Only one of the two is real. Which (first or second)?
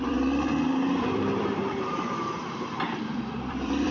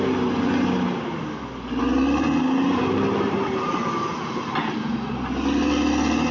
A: second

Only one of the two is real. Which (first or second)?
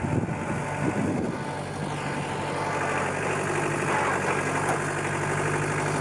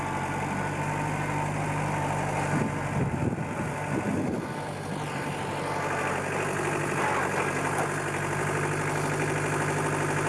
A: first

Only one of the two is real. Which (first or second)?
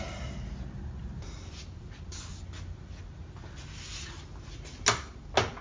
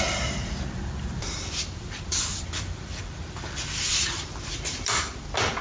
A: first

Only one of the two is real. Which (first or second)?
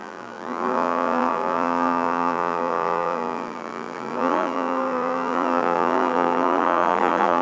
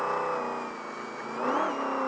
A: second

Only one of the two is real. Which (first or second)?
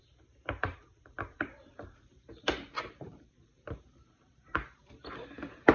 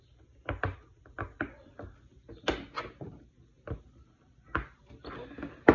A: second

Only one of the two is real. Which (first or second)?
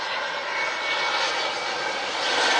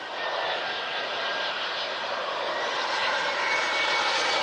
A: first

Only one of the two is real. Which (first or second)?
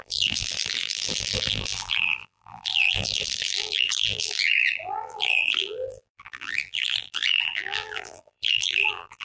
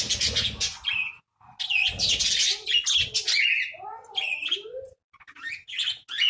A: second